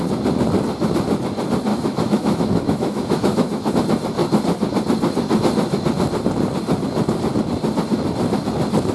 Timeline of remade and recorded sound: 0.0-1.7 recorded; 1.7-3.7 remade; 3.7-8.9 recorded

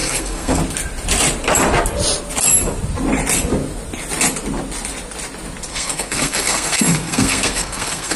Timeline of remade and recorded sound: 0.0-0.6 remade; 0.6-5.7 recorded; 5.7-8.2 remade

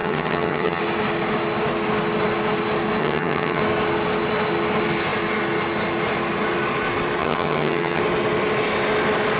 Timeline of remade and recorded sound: 0.0-0.8 remade; 0.8-3.0 recorded; 3.0-3.6 remade; 3.6-7.2 recorded; 7.2-8.0 remade; 8.0-9.4 recorded